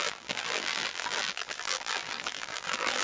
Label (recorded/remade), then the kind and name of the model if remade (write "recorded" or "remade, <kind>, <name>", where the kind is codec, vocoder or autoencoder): remade, vocoder, BigVGAN v2